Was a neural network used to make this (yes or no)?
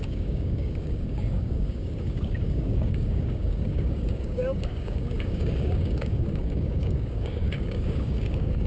yes